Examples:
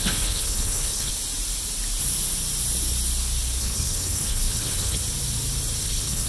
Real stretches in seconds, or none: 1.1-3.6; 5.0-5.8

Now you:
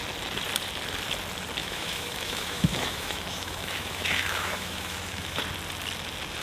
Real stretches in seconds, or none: 0.0-1.6; 5.4-6.4

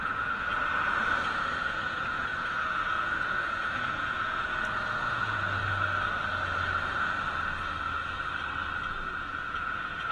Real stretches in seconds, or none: 0.5-1.2; 5.6-9.2

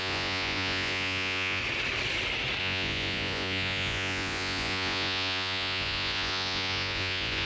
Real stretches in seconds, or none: 1.6-2.6

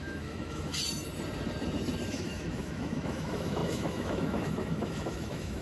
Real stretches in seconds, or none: 0.7-2.1

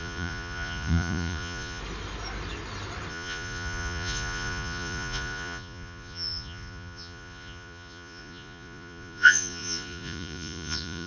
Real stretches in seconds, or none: 1.8-3.1

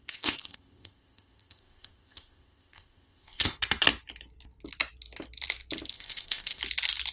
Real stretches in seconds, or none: 3.6-5.9; 6.6-7.1

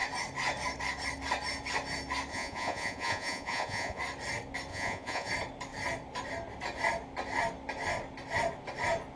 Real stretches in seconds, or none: 0.0-2.3; 4.0-4.7; 5.3-9.2